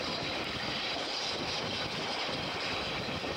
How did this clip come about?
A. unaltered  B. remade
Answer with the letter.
A